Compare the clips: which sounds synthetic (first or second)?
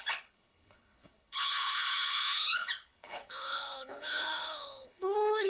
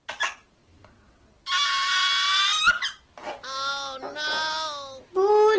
first